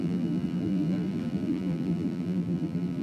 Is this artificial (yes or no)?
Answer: yes